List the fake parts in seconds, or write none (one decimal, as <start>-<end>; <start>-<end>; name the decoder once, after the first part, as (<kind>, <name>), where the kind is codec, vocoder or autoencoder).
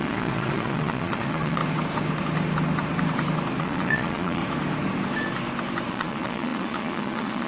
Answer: 0.0-1.6 (vocoder, Vocos); 3.6-4.4; 5.9-7.5